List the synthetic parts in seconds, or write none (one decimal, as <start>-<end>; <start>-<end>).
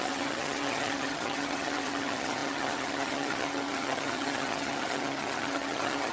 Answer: 0.0-6.1